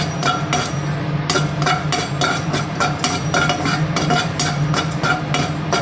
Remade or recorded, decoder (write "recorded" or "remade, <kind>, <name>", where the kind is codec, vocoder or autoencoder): recorded